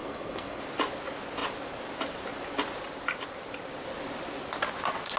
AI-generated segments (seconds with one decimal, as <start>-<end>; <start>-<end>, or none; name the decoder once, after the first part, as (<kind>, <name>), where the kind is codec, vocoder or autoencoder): 0.0-0.6 (codec, SNAC)